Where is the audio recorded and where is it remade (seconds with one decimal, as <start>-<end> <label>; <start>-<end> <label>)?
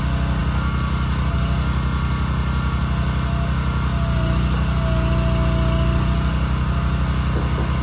0.0-7.8 recorded